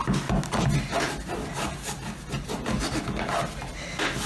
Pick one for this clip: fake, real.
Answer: real